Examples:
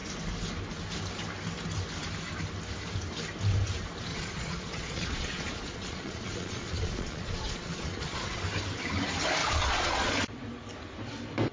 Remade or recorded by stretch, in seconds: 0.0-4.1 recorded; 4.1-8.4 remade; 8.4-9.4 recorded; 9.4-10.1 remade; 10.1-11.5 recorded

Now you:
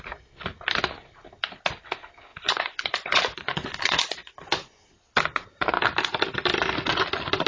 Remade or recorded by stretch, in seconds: 0.0-2.3 recorded; 2.3-4.8 remade; 4.8-7.5 recorded